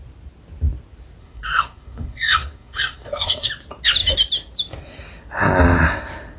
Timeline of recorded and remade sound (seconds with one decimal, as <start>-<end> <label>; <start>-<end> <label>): 0.0-1.2 recorded; 1.2-3.5 remade; 3.5-6.4 recorded